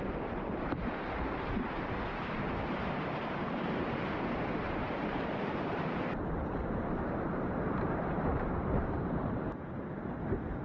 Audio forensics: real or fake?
fake